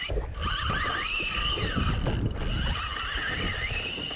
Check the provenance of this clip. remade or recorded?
recorded